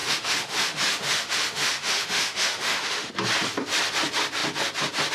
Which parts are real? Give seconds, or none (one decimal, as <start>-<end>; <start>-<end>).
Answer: 3.1-5.1